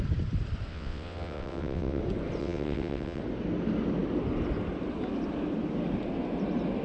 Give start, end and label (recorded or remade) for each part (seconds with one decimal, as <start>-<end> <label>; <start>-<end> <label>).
0.0-0.7 recorded; 0.7-2.0 remade; 2.0-2.4 recorded; 2.4-3.2 remade; 3.2-6.8 recorded